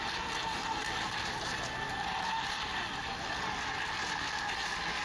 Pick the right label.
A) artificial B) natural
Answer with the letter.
B